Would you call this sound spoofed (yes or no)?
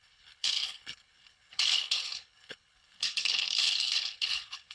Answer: yes